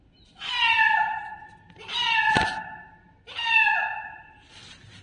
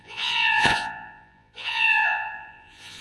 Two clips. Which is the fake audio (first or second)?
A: second